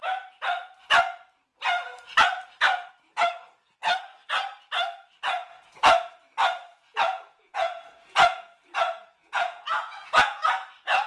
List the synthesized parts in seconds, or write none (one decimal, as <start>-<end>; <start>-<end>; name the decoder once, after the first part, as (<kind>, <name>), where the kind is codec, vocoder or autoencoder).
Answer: 6.7-10.5 (vocoder, Vocos)